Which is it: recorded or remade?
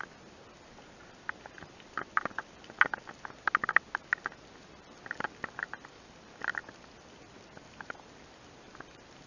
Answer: recorded